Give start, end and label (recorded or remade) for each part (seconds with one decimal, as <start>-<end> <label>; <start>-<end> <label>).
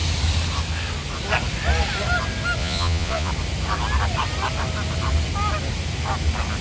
0.0-2.6 recorded; 2.6-3.3 remade; 3.3-6.6 recorded